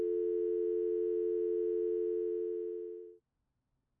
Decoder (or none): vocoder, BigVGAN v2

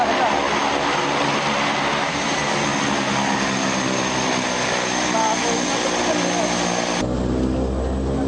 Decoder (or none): none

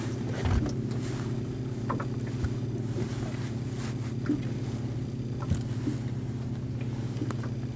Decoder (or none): none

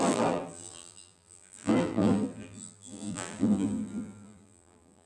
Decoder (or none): vocoder, BigVGAN v2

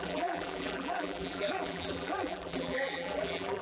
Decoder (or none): vocoder, BigVGAN v2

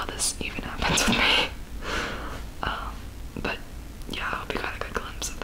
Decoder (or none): none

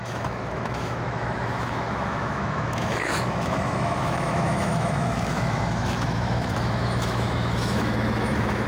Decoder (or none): autoencoder, DAC-VAE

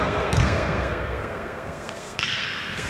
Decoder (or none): codec, SNAC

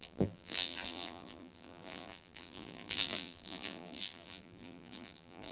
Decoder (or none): vocoder, BigVGAN v2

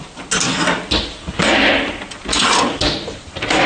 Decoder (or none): none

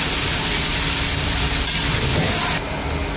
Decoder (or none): none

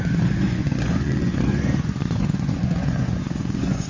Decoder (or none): vocoder, Vocos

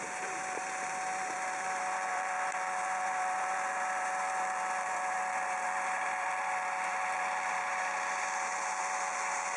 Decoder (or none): vocoder, BigVGAN v2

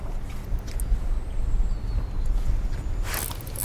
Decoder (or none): none